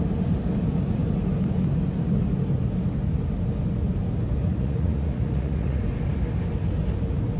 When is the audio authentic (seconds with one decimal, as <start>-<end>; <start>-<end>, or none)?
0.0-4.5; 5.8-7.4